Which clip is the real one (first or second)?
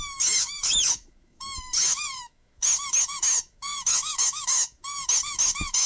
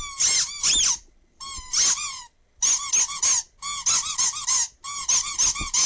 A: second